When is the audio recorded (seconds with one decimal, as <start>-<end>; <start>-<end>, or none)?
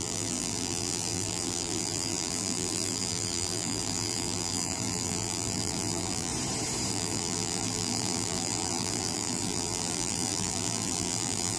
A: 6.3-6.9